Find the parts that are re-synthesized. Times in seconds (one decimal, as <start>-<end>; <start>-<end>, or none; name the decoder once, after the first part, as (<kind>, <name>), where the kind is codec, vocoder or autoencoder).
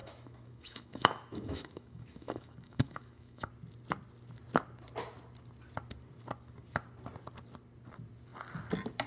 0.0-3.5 (autoencoder, DAC-VAE)